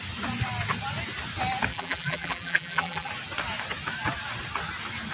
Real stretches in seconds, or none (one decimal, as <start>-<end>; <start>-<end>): 0.0-1.7; 3.1-5.1